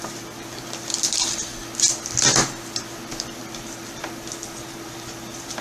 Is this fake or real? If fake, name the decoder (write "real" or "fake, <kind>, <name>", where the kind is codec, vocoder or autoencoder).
real